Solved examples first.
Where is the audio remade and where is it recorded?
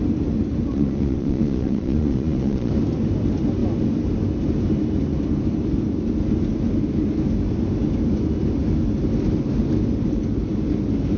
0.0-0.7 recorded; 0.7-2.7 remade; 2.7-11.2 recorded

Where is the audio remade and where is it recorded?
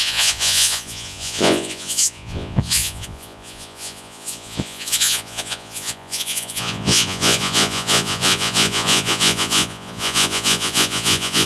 0.0-11.5 remade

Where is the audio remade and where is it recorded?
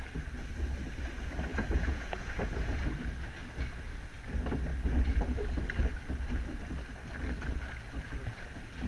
0.0-1.5 recorded; 1.5-2.5 remade; 2.5-8.9 recorded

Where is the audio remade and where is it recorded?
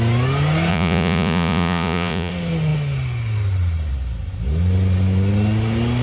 0.0-0.7 recorded; 0.7-2.3 remade; 2.3-6.0 recorded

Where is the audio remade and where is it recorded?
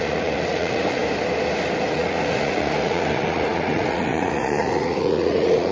0.0-1.0 remade; 1.0-1.9 recorded; 1.9-5.7 remade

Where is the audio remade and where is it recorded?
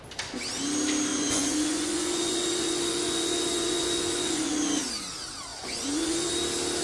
0.0-1.1 recorded; 1.1-4.5 remade; 4.5-5.5 recorded; 5.5-6.3 remade; 6.3-6.8 recorded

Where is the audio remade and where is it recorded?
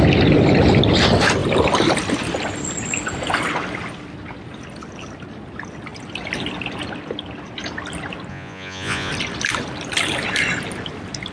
0.0-8.3 recorded; 8.3-9.1 remade; 9.1-11.3 recorded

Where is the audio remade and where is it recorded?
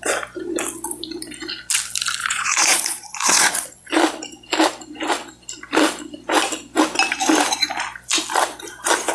0.0-2.2 recorded; 2.2-4.0 remade; 4.0-9.1 recorded